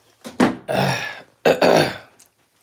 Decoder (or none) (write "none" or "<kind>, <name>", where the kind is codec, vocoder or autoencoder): none